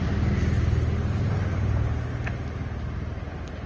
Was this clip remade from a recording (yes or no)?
no